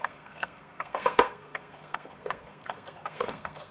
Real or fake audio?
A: fake